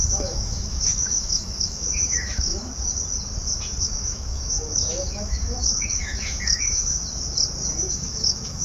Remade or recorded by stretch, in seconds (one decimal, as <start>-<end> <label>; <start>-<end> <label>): 0.0-2.5 remade; 2.5-3.8 recorded; 3.8-6.9 remade; 6.9-7.9 recorded; 7.9-8.6 remade